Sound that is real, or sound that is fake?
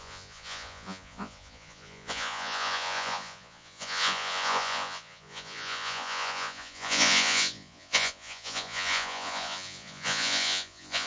fake